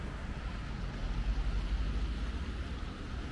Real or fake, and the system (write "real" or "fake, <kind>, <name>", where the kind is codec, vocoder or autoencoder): real